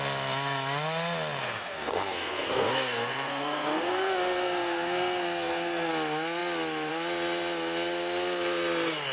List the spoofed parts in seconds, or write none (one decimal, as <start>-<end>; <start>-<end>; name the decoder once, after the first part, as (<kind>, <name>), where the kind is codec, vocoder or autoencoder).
1.4-5.9 (codec, SNAC)